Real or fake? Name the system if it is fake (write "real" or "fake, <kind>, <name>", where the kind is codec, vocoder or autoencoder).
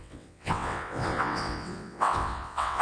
fake, vocoder, WaveNeXt